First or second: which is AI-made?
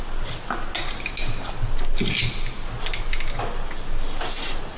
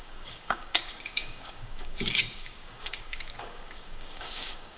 second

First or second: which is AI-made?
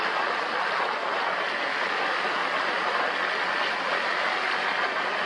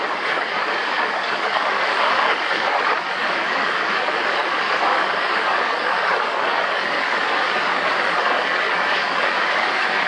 second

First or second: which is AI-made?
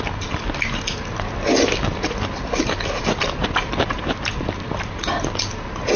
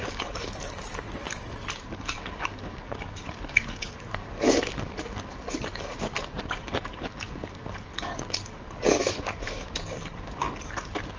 second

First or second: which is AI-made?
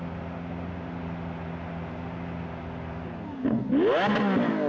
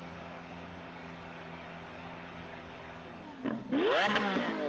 second